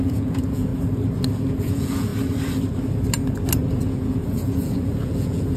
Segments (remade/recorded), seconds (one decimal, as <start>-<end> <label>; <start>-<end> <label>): 0.0-0.7 remade; 0.7-1.6 recorded; 1.6-2.1 remade; 2.1-3.8 recorded; 3.8-5.6 remade